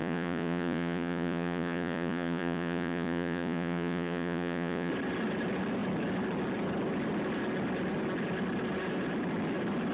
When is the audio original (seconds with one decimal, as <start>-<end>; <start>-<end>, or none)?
4.9-9.9